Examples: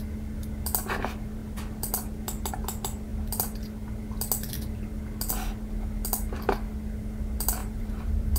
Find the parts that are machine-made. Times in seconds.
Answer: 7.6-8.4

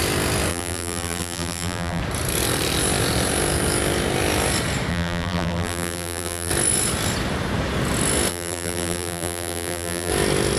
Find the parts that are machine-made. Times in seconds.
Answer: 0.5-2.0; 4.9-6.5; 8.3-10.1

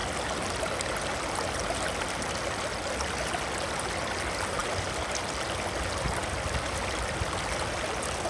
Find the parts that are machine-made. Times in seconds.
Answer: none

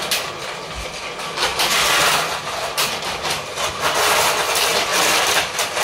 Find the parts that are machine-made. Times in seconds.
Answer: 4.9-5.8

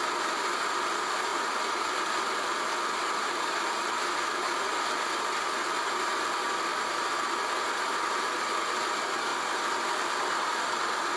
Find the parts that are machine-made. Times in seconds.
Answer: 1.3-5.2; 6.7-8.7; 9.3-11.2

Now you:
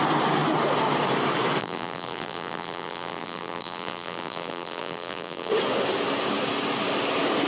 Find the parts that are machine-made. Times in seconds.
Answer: 1.6-5.5

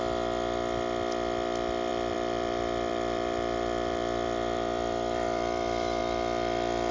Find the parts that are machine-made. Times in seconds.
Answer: 1.9-6.0

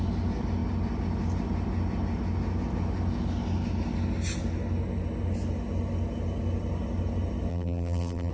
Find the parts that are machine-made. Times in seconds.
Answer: 7.5-8.3